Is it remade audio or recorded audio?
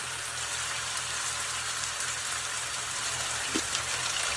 remade